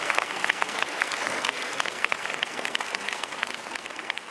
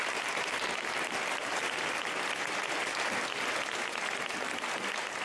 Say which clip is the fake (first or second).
first